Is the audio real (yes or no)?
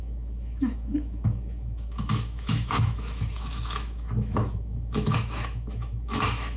no